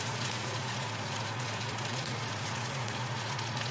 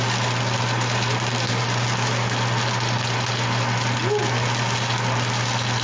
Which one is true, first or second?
second